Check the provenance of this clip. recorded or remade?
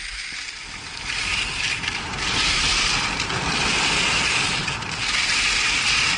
recorded